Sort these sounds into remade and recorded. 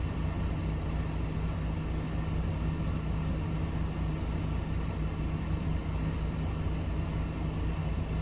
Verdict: recorded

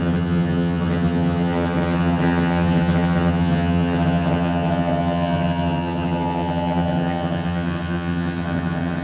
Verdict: remade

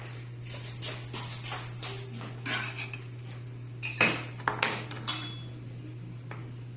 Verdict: recorded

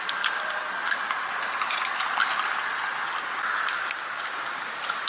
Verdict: recorded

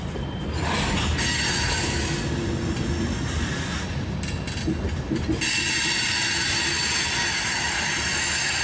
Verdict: recorded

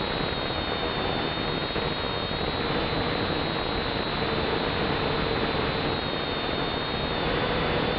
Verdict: recorded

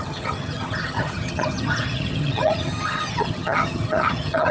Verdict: remade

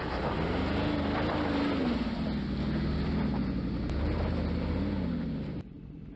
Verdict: recorded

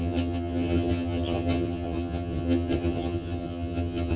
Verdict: remade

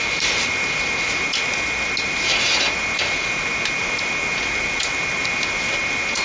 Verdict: recorded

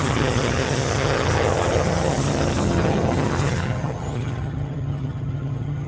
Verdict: remade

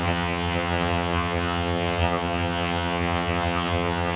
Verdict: remade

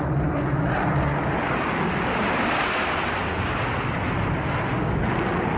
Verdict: recorded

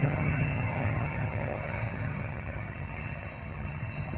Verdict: remade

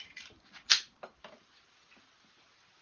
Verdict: recorded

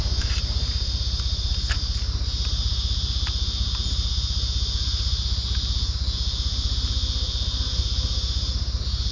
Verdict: recorded